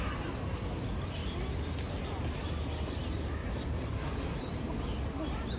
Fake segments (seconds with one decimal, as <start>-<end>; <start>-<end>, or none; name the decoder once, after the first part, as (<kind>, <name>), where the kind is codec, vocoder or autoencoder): 3.4-5.6 (vocoder, BigVGAN v2)